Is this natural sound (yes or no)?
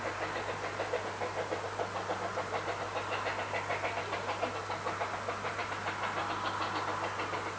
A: yes